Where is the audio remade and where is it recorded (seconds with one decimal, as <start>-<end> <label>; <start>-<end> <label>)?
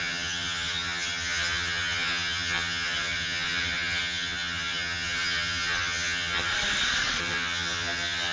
0.0-6.5 remade; 6.5-7.2 recorded; 7.2-8.3 remade